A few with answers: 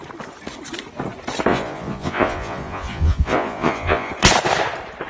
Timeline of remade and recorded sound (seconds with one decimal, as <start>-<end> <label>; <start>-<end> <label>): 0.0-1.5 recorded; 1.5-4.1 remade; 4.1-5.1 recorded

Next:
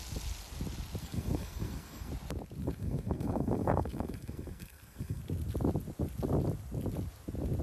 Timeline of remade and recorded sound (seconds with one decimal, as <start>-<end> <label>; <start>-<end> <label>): 0.0-1.0 recorded; 1.0-2.1 remade; 2.1-2.6 recorded; 2.6-5.2 remade; 5.2-7.6 recorded

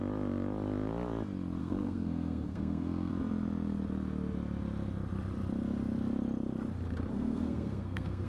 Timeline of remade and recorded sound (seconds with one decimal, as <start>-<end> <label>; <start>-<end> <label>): 0.0-1.6 recorded; 1.6-3.1 remade; 3.1-7.1 recorded; 7.1-8.3 remade